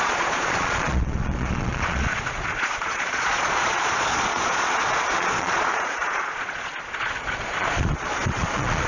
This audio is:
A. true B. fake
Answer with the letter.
B